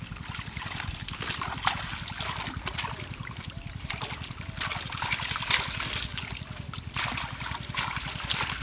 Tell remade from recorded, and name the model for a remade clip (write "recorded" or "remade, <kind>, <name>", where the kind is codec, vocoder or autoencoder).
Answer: recorded